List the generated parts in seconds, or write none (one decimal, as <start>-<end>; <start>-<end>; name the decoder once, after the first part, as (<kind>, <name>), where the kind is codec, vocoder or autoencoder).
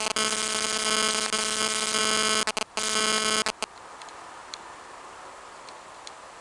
none